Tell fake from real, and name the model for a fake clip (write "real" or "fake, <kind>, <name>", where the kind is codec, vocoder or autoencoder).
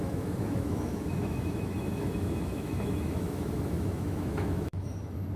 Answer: fake, autoencoder, DAC-VAE